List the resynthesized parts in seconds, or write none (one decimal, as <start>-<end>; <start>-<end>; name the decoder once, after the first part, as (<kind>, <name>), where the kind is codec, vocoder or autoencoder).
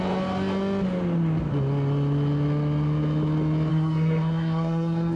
3.7-5.2 (codec, SNAC)